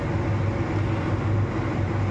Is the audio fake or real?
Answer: real